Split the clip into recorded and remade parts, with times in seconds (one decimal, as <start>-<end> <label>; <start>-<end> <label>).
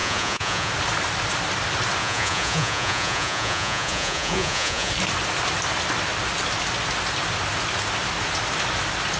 0.0-0.7 remade; 0.7-2.0 recorded; 2.0-4.9 remade; 4.9-9.2 recorded